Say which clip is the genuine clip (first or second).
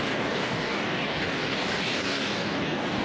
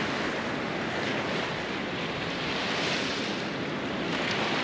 second